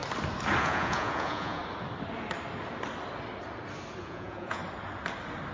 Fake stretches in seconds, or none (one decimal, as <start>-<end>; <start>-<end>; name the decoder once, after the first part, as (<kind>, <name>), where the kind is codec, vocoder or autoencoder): 0.6-1.6 (vocoder, Vocos); 4.0-4.6